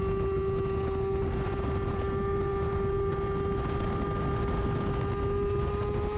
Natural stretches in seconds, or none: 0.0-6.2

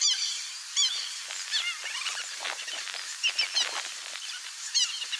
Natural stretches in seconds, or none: 0.8-2.3; 3.1-3.9

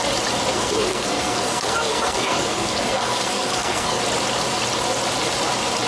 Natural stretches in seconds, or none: 0.0-0.5; 4.0-5.9

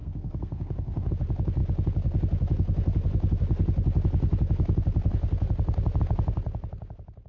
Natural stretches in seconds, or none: 1.1-7.3

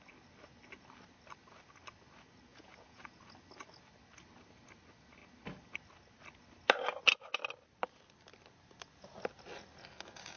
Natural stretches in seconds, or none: 0.0-2.5; 3.2-10.4

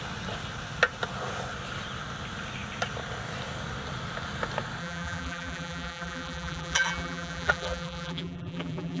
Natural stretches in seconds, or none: 0.0-4.8